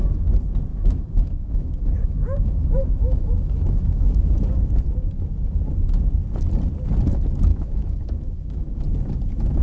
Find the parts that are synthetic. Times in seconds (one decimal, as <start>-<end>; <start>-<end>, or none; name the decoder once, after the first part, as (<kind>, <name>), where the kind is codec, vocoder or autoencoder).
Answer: 0.7-4.3 (autoencoder, DAC-VAE); 7.5-8.8